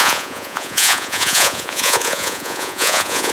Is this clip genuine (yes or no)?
no